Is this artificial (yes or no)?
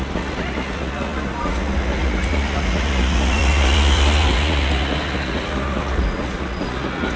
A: yes